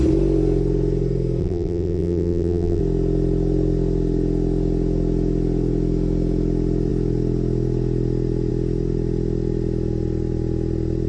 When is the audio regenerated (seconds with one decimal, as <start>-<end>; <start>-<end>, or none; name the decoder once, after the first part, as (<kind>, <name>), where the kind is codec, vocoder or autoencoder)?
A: 1.4-2.8 (vocoder, BigVGAN v2)